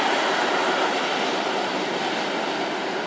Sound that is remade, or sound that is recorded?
recorded